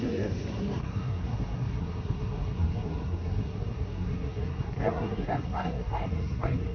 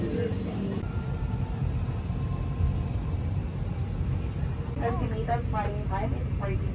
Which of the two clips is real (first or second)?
second